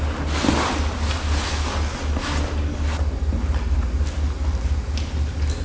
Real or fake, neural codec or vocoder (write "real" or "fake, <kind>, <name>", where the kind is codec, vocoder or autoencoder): real